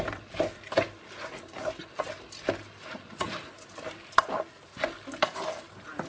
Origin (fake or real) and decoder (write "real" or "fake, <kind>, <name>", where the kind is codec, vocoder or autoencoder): real